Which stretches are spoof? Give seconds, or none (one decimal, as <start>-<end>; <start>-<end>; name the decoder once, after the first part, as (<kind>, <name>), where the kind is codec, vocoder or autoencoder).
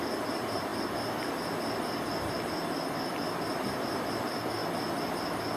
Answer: 0.0-4.6 (vocoder, BigVGAN v2)